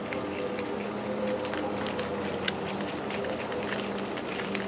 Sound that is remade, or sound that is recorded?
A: recorded